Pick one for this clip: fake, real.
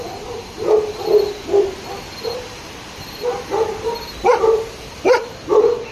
fake